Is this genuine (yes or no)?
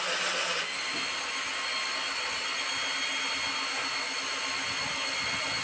yes